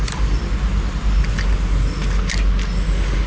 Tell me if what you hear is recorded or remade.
recorded